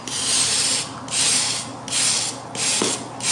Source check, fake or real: real